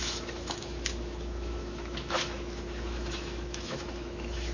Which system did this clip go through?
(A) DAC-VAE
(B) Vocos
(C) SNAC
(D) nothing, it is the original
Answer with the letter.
A